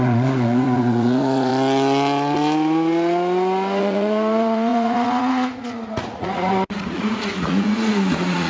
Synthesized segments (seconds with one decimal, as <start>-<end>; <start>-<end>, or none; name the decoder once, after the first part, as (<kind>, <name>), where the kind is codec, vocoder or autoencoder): 0.0-1.5 (vocoder, Vocos); 3.8-8.5